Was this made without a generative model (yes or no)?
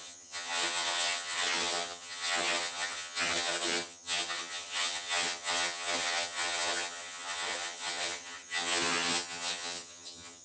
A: no